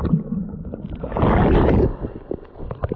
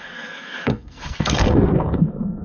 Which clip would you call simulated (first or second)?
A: second